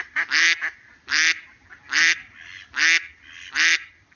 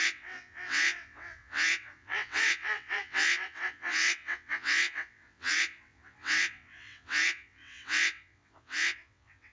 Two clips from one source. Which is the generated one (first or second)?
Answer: second